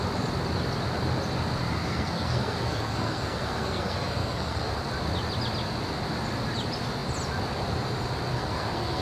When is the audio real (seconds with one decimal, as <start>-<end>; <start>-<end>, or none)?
0.0-1.8; 4.7-8.3